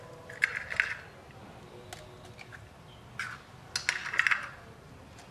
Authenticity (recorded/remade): recorded